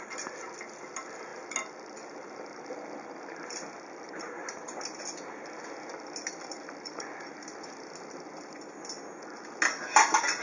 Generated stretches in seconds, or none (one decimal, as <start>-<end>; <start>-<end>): none